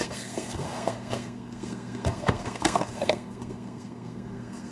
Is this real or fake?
fake